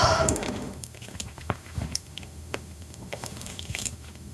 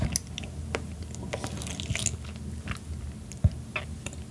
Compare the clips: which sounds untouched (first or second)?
second